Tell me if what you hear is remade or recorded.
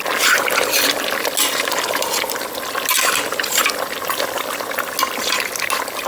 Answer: recorded